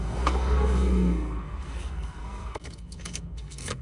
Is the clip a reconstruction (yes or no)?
yes